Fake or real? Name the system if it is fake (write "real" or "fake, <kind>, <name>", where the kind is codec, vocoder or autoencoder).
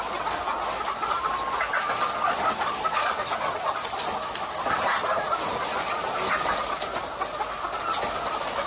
real